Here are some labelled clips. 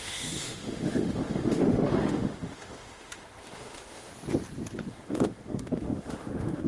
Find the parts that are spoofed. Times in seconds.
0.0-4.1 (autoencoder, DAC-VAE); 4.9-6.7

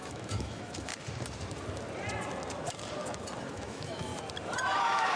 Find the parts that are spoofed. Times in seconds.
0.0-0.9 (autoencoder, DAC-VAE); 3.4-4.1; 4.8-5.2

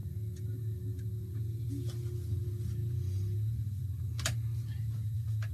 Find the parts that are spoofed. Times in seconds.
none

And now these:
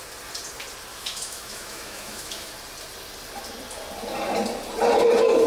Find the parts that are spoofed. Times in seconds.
0.9-2.5 (autoencoder, DAC-VAE)